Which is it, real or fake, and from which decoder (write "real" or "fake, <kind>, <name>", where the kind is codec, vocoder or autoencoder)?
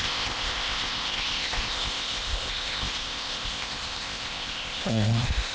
fake, codec, ZipCodec